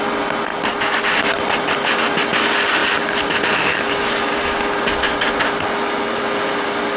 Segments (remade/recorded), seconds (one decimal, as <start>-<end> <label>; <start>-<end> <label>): 0.0-7.0 recorded